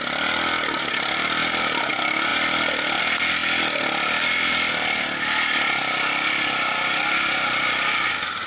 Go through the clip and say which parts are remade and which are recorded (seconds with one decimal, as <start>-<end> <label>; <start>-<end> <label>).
0.0-8.5 recorded